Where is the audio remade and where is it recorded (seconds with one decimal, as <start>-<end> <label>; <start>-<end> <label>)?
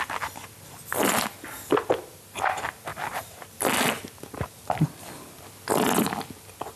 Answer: 0.0-6.8 recorded